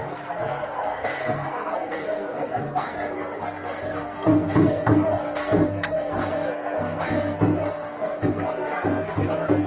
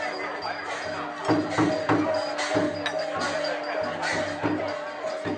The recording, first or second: second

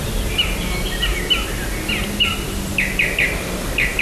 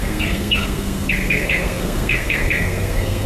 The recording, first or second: first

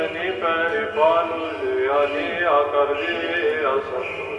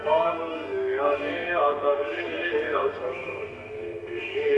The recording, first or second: first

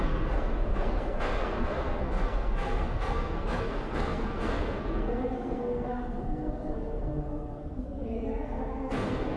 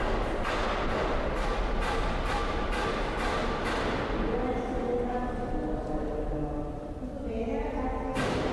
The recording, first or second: second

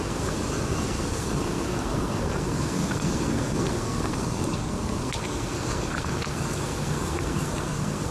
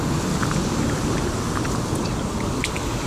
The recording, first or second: second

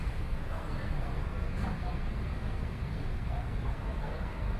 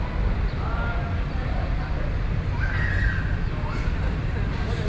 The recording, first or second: second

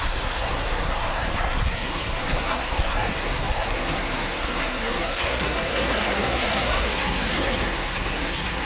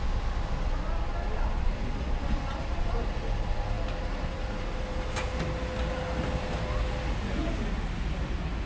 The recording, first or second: second